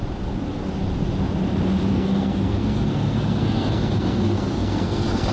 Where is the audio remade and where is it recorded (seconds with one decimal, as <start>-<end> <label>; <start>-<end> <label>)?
0.0-1.9 recorded; 1.9-5.3 remade